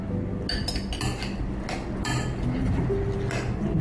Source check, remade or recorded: recorded